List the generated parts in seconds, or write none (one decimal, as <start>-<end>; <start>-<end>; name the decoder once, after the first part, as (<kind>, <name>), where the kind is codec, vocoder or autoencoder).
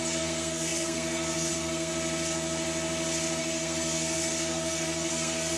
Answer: 0.0-1.9 (codec, SNAC); 3.4-5.6